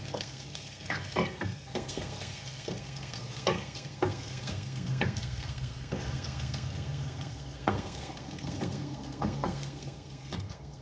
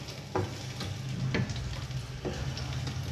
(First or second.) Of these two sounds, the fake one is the first